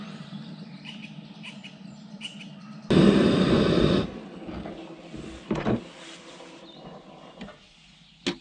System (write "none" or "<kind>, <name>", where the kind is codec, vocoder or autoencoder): none